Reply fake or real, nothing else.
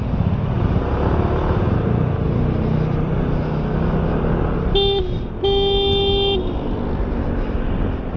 real